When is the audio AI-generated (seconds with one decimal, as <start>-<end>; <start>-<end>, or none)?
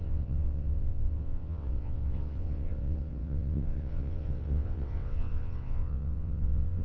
0.0-6.8